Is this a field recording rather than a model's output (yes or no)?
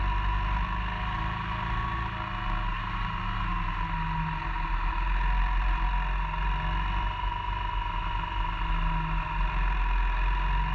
yes